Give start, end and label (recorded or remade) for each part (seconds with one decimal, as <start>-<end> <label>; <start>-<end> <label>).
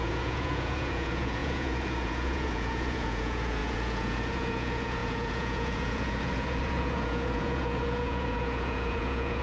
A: 0.0-9.4 remade